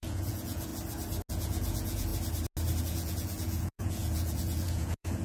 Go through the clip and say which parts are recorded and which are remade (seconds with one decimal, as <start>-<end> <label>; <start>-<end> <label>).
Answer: 0.0-0.7 remade; 0.7-1.3 recorded; 1.3-2.1 remade; 2.1-2.8 recorded; 2.8-5.2 remade